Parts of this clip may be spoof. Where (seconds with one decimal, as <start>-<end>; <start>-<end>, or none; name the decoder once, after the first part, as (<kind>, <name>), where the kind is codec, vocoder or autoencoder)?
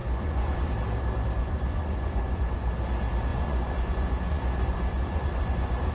0.0-0.7 (vocoder, Vocos); 1.4-2.7; 3.3-5.9